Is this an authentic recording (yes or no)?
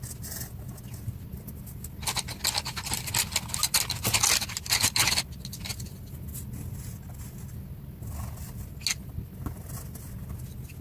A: yes